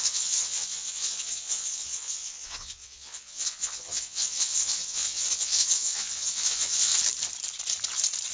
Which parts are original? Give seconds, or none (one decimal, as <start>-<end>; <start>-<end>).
6.9-8.3